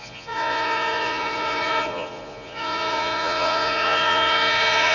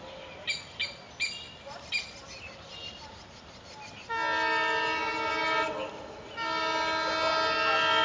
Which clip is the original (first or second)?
second